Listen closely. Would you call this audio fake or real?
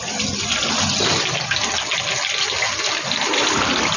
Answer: real